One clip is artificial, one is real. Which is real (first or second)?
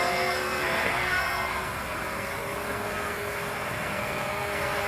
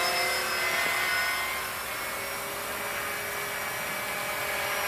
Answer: second